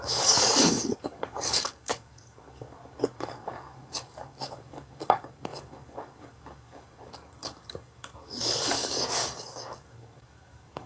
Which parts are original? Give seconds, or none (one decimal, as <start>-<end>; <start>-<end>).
none